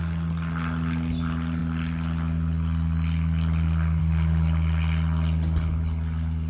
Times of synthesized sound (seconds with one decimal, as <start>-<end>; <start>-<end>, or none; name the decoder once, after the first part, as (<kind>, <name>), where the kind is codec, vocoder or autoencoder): none